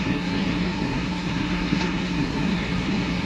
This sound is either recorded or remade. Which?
remade